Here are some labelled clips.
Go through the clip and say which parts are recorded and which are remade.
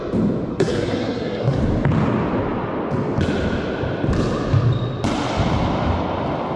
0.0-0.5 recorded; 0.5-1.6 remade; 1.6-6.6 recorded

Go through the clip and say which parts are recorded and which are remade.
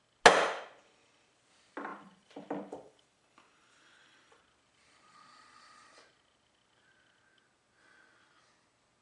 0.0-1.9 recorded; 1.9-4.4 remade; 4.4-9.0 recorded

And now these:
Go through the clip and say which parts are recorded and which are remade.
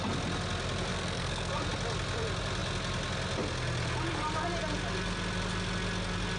0.0-0.9 recorded; 0.9-1.5 remade; 1.5-6.4 recorded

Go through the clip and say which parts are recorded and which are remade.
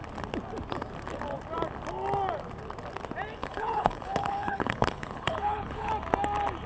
0.0-3.4 recorded; 3.4-5.9 remade; 5.9-6.7 recorded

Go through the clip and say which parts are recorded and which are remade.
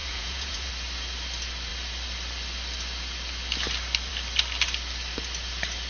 0.0-0.7 remade; 0.7-5.9 recorded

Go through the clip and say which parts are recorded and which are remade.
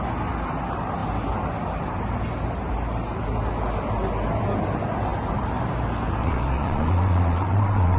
0.0-6.2 recorded; 6.2-8.0 remade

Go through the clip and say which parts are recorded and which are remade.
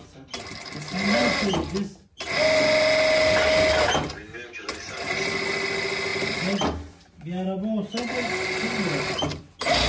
0.0-9.9 recorded